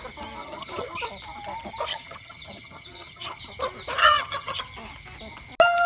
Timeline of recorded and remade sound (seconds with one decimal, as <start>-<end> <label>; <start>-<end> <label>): 0.0-0.4 recorded; 0.4-1.0 remade; 1.0-1.9 recorded; 1.9-3.4 remade; 3.4-4.0 recorded; 4.0-4.6 remade; 4.6-5.9 recorded